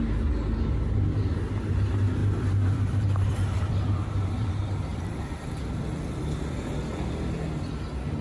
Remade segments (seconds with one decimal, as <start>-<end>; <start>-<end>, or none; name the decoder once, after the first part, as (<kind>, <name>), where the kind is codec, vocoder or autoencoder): 2.2-4.5 (vocoder, BigVGAN v2); 4.9-6.7